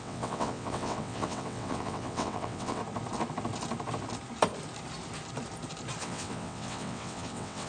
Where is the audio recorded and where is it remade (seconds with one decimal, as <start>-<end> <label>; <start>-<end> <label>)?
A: 0.0-2.8 remade; 2.8-6.0 recorded; 6.0-7.7 remade